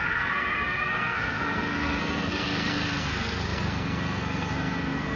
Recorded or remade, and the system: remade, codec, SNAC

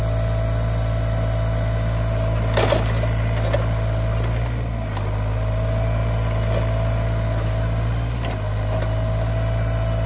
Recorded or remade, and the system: recorded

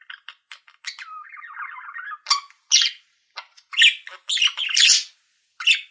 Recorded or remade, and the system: recorded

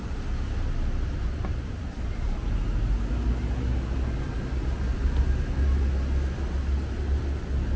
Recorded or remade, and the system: recorded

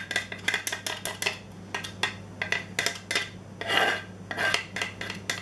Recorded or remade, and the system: recorded